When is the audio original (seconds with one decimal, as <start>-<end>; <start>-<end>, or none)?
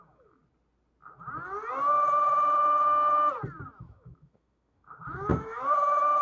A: 0.4-3.8